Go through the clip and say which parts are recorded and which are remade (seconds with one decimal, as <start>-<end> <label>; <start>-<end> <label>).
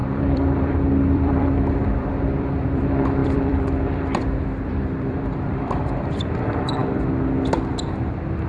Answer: 0.0-6.8 remade; 6.8-7.8 recorded; 7.8-8.5 remade